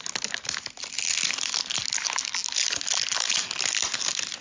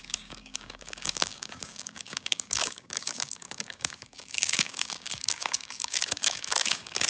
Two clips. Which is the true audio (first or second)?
first